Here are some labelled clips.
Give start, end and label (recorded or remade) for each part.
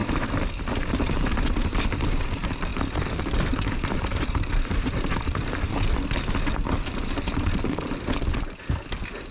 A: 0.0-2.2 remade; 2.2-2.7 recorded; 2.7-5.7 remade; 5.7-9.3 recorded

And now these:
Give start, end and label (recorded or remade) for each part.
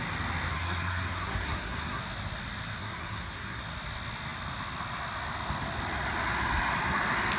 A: 0.0-0.5 recorded; 0.5-2.0 remade; 2.0-2.8 recorded; 2.8-3.6 remade; 3.6-7.4 recorded